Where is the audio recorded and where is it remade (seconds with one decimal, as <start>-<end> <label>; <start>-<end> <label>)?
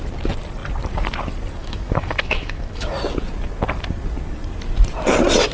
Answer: 0.0-1.6 recorded; 1.6-2.9 remade; 2.9-5.5 recorded